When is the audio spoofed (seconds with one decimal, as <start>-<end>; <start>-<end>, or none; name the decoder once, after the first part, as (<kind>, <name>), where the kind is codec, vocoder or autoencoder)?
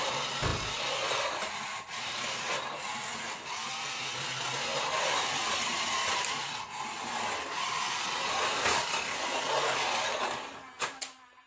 none